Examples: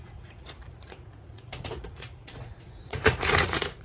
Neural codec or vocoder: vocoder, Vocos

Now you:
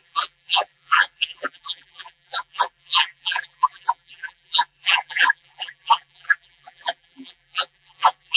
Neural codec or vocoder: vocoder, BigVGAN v2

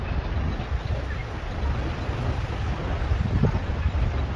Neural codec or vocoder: none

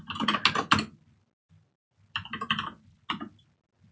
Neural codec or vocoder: none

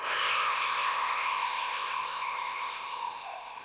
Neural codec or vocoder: codec, ZipCodec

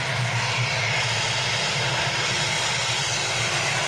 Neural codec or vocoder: vocoder, BigVGAN v2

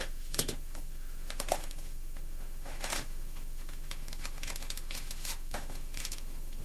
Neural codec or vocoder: autoencoder, DAC-VAE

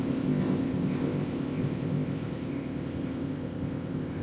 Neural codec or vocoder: codec, ZipCodec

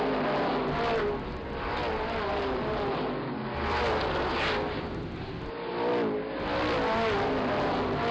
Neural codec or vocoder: none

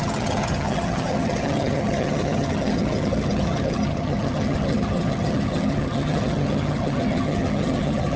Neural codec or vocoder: vocoder, HiFi-GAN